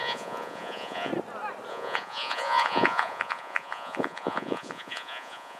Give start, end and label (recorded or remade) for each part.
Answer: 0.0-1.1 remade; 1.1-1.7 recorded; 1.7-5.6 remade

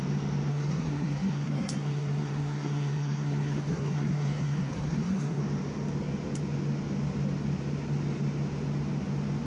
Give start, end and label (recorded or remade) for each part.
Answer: 0.0-0.5 recorded; 0.5-5.4 remade; 5.4-9.5 recorded

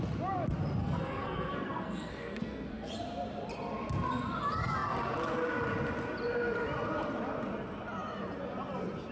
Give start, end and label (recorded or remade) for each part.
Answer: 0.0-0.8 recorded; 0.8-2.9 remade; 2.9-9.1 recorded

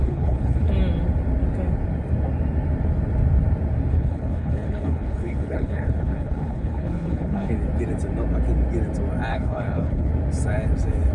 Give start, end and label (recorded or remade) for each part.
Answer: 0.0-0.7 remade; 0.7-3.9 recorded; 3.9-7.5 remade; 7.5-9.3 recorded; 9.3-10.1 remade; 10.1-11.1 recorded

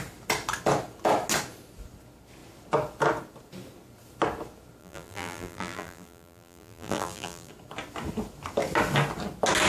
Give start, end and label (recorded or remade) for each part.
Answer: 0.0-4.8 recorded; 4.8-7.5 remade; 7.5-9.7 recorded

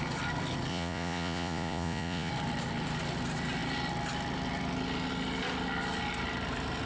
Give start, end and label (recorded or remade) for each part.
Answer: 0.0-0.7 recorded; 0.7-2.3 remade; 2.3-6.9 recorded